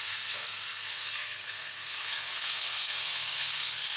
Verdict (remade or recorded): remade